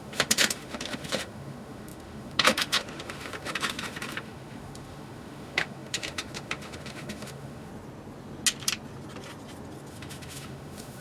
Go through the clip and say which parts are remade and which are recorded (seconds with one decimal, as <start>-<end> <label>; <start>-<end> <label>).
0.0-7.7 remade; 7.7-9.9 recorded; 9.9-11.0 remade